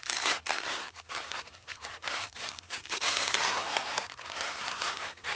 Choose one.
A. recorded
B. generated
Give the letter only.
B